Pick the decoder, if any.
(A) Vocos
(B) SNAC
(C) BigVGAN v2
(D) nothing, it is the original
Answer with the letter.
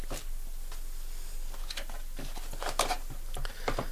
D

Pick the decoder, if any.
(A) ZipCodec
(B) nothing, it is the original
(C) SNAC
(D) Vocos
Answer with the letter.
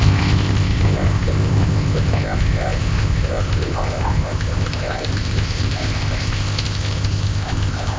A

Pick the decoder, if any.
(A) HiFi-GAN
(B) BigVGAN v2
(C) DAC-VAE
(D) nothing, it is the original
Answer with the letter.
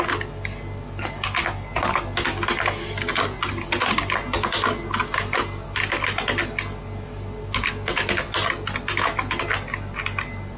D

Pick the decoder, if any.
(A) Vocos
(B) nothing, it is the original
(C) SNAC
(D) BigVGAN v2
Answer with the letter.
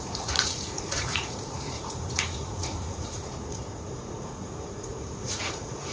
A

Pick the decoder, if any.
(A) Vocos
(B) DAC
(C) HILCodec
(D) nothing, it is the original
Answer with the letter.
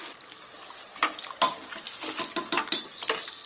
D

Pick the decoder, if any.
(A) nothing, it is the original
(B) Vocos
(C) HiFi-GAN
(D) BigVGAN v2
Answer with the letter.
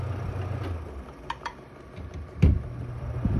A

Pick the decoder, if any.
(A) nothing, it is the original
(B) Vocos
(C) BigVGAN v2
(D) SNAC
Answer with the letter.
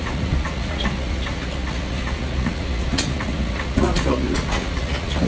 B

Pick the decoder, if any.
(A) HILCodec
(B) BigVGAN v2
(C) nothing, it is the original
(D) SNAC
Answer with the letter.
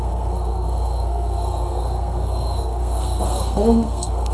D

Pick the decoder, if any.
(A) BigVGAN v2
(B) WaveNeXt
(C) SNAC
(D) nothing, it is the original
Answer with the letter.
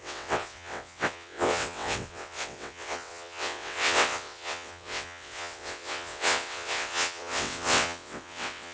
B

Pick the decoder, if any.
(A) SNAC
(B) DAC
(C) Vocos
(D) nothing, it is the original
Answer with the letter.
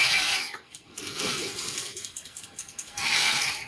A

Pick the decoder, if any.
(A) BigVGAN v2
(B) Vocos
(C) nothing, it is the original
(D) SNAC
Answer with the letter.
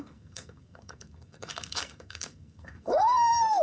D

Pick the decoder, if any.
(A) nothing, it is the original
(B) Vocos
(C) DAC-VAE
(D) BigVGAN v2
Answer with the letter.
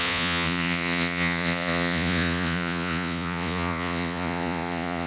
B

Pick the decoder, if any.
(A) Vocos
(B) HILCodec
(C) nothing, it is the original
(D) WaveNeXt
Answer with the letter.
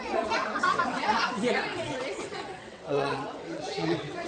D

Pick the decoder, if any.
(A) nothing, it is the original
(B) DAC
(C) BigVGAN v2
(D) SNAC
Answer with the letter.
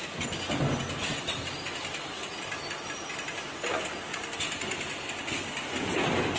A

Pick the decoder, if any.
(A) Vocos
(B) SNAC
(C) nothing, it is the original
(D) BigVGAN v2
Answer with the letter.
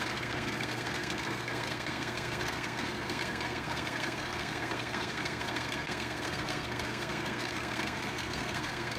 B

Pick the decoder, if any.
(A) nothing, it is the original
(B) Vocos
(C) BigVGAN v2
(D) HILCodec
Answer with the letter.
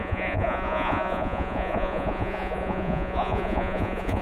B